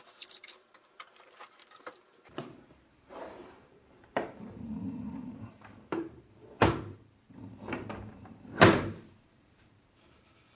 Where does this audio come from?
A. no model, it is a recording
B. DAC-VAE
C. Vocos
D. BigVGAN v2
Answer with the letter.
D